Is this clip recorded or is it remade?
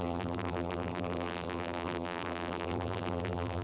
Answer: remade